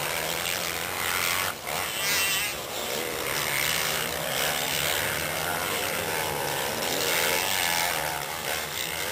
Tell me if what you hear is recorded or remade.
recorded